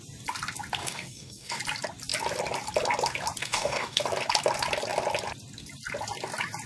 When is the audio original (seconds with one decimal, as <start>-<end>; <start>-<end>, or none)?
0.0-0.8; 1.6-3.4; 4.0-6.7